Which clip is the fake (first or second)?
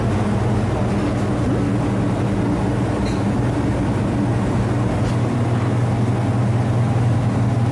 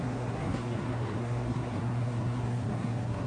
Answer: second